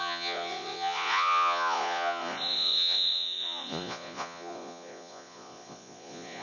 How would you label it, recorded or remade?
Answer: remade